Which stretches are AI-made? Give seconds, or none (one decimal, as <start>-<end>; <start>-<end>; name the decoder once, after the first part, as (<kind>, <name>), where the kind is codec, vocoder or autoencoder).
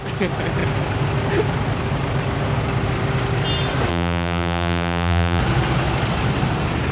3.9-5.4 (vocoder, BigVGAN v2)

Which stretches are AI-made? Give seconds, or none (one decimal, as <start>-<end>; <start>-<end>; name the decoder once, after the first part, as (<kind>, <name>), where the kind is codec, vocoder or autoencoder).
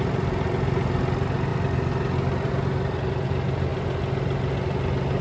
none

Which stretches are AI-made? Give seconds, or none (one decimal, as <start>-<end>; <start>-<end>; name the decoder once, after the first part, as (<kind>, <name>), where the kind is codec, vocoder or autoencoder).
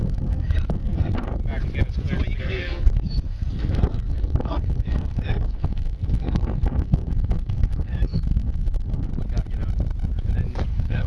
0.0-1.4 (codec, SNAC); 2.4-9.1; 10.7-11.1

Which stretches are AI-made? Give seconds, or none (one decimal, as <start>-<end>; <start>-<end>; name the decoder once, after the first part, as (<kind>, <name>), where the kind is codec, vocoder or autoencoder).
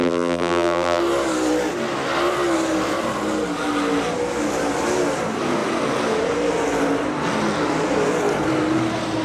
0.0-1.0 (vocoder, BigVGAN v2)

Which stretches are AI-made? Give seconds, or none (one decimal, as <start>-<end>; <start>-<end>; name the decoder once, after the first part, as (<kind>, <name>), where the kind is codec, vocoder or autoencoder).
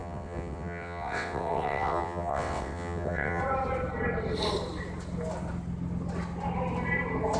0.0-3.4 (vocoder, WaveNeXt)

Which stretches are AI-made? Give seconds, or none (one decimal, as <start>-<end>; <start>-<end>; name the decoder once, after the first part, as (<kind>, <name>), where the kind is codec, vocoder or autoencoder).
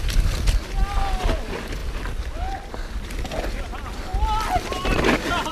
none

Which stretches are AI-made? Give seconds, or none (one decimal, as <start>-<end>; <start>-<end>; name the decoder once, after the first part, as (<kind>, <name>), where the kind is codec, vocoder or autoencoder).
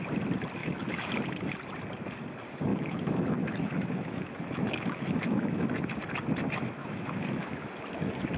0.6-1.1 (autoencoder, DAC-VAE); 2.7-5.7; 6.8-7.7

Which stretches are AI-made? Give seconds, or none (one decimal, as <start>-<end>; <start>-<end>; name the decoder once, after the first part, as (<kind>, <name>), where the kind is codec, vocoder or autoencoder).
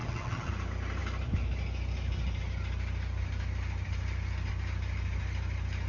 0.0-0.5 (vocoder, HiFi-GAN)